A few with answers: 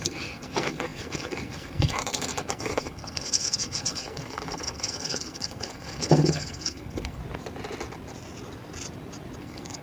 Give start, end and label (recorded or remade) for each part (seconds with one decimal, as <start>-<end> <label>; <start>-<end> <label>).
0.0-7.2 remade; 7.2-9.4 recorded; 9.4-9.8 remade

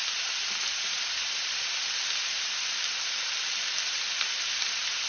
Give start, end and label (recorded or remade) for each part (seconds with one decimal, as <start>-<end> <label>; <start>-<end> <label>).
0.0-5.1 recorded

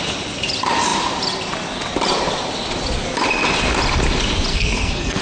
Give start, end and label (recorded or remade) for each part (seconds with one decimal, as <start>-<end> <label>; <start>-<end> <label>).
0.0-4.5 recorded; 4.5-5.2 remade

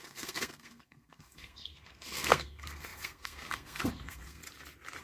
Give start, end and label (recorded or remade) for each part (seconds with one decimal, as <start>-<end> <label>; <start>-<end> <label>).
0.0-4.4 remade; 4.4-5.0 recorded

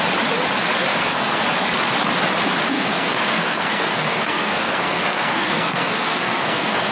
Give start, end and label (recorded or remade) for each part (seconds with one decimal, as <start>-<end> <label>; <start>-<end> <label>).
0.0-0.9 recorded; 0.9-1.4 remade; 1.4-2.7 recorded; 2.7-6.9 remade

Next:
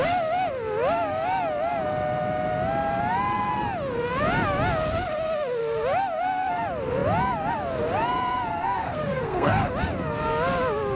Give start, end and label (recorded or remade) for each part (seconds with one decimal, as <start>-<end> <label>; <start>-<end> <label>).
0.0-8.5 recorded; 8.5-9.7 remade; 9.7-10.9 recorded

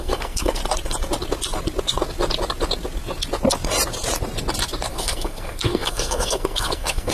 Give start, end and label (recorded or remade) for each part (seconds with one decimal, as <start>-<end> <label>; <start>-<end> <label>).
0.0-0.6 remade; 0.6-4.9 recorded; 4.9-7.1 remade

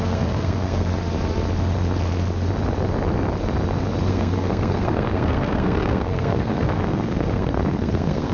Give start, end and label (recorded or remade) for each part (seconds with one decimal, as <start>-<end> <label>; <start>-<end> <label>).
0.0-0.9 remade; 0.9-4.1 recorded; 4.1-8.3 remade